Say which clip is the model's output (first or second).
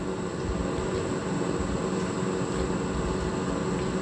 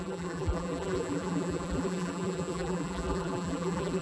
second